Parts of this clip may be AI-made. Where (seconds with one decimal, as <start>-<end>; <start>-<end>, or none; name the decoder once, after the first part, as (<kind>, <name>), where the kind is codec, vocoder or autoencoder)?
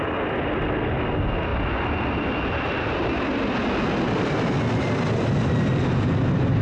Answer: none